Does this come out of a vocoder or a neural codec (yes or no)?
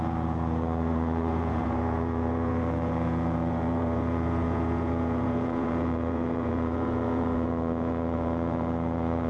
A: yes